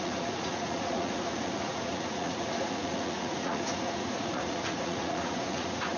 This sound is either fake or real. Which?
fake